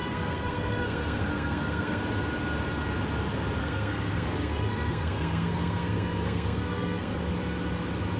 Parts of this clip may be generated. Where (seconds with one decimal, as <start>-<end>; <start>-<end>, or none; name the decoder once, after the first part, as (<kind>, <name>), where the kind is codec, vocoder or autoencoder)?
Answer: 0.0-2.0 (codec, SNAC); 3.6-7.2

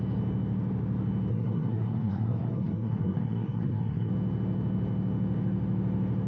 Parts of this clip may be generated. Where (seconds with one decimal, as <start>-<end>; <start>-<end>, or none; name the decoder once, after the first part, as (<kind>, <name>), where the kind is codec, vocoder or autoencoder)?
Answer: 1.3-4.1 (codec, SNAC)

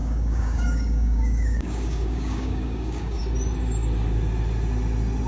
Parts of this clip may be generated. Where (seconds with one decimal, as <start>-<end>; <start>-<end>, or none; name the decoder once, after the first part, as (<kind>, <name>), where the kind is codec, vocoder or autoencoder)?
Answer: 0.0-3.2 (codec, DAC)

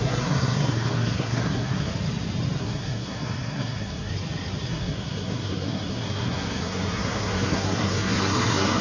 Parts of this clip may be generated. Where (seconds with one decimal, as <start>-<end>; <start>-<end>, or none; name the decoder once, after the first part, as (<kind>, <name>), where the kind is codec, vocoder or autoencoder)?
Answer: 0.0-1.9 (codec, SNAC); 2.6-4.1; 4.7-8.8

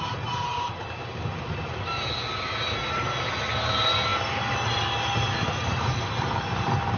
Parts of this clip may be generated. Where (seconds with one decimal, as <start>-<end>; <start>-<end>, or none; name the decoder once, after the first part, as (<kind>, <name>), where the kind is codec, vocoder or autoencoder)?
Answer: none